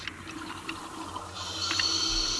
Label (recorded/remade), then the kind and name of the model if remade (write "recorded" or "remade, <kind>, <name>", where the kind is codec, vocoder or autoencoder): recorded